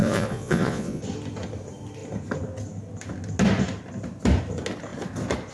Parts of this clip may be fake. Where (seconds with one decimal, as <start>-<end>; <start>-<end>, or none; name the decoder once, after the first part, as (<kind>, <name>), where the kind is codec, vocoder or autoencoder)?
0.0-1.0 (vocoder, Vocos)